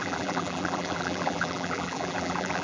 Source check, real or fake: fake